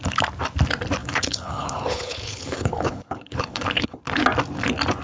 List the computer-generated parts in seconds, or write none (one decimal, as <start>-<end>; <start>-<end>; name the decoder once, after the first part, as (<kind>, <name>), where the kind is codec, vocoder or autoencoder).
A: 1.0-4.0 (codec, HILCodec)